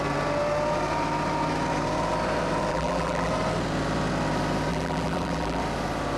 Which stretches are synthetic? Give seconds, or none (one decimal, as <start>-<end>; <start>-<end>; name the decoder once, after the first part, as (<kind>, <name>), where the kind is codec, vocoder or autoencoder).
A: 2.7-3.3 (vocoder, BigVGAN v2); 4.7-5.6